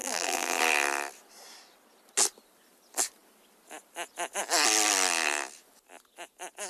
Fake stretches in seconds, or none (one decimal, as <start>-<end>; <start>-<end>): 0.0-0.6